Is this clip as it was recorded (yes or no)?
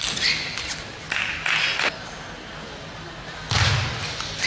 yes